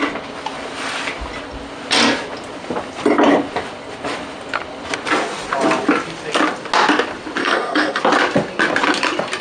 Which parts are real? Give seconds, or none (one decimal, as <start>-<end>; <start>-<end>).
0.0-7.4; 8.0-9.4

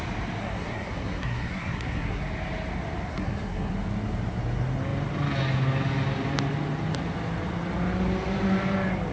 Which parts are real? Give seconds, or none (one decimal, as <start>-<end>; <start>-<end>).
0.0-0.4; 2.2-3.1; 3.7-9.1